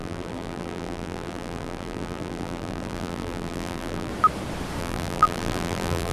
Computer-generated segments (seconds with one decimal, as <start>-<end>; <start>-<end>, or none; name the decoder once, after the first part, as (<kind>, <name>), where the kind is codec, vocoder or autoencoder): 0.0-4.1 (vocoder, BigVGAN v2); 4.8-6.1